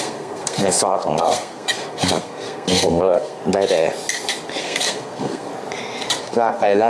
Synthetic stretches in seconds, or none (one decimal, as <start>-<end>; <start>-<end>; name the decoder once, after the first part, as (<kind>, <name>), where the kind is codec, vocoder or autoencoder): 0.0-3.4 (codec, SNAC); 4.6-5.5; 6.2-6.9